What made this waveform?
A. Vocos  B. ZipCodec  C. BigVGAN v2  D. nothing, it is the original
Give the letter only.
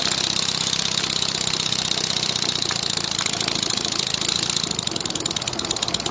D